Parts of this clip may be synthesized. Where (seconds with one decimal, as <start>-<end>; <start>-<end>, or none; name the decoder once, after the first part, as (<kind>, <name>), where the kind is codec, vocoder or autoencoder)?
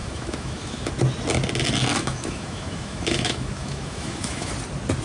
0.0-0.9 (autoencoder, DAC-VAE); 1.9-4.5